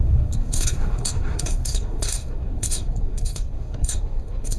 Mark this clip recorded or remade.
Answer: remade